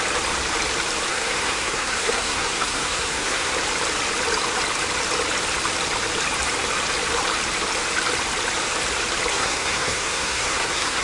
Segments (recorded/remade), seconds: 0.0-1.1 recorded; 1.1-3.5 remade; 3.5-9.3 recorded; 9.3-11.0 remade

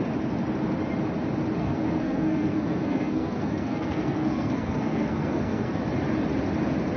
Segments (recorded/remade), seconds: 0.0-1.6 recorded; 1.6-5.8 remade; 5.8-7.0 recorded